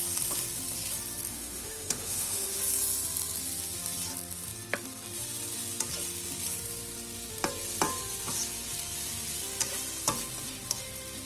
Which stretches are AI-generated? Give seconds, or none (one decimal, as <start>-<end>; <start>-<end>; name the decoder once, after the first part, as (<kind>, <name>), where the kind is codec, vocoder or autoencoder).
1.3-2.6 (autoencoder, DAC-VAE)